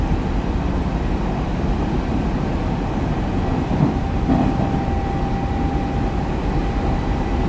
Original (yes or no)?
yes